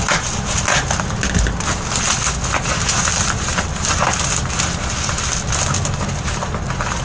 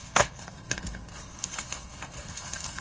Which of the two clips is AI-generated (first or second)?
second